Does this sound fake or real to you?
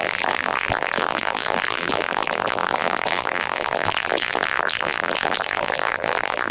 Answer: fake